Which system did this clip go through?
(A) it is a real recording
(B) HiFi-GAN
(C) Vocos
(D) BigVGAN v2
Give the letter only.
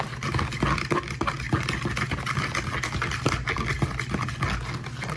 A